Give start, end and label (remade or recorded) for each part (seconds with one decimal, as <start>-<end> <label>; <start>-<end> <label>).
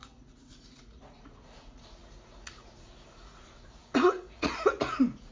0.0-5.3 remade